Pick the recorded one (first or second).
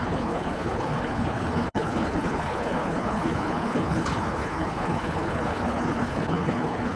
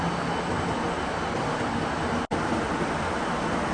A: second